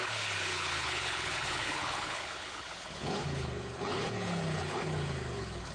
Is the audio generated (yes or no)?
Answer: yes